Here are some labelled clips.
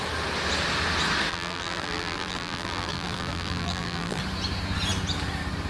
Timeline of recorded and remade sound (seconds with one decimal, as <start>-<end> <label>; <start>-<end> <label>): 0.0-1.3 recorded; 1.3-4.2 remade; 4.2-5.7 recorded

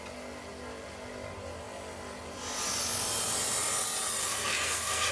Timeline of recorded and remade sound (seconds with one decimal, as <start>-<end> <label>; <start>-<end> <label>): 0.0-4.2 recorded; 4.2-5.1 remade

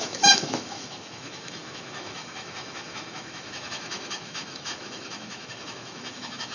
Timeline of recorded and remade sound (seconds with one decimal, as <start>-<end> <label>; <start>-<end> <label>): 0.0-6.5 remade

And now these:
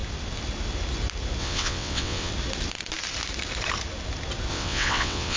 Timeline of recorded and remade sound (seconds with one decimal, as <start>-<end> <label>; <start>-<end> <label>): 0.0-1.4 recorded; 1.4-2.3 remade; 2.3-4.5 recorded; 4.5-5.4 remade

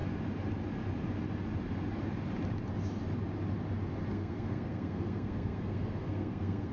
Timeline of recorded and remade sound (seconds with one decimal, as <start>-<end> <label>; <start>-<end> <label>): 0.0-4.1 recorded; 4.1-6.7 remade

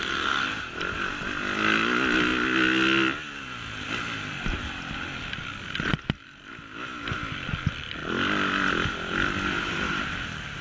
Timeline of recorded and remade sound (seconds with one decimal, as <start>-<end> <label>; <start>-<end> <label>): 0.0-10.6 recorded